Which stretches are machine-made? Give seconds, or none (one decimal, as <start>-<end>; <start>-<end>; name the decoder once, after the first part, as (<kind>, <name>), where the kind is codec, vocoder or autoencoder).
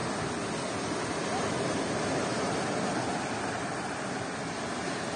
none